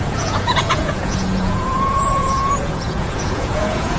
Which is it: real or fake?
fake